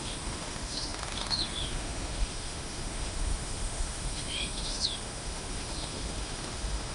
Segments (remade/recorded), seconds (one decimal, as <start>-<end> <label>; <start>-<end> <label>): 0.0-6.9 remade